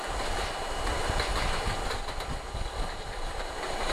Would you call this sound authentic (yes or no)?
yes